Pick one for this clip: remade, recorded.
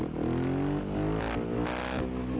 recorded